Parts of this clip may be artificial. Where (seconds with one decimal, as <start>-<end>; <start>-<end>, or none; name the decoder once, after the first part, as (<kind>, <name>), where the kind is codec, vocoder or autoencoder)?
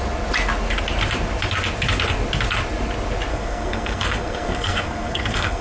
3.3-5.6 (codec, SNAC)